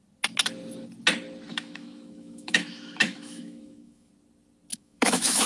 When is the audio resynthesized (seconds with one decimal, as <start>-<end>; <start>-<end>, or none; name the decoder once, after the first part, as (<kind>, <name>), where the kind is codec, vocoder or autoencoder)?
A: 1.5-4.1 (autoencoder, DAC-VAE); 4.7-5.5